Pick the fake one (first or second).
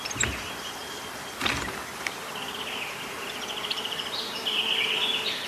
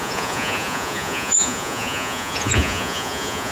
second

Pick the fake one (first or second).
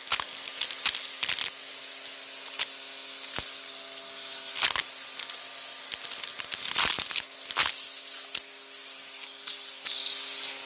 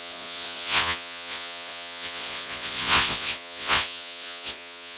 second